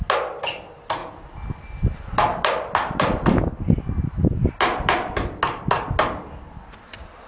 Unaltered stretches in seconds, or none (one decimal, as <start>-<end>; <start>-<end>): 0.0-7.3